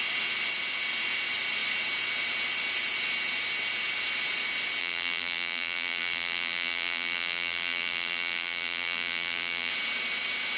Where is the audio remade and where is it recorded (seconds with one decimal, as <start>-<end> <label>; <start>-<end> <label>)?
0.0-4.8 recorded; 4.8-9.7 remade; 9.7-10.6 recorded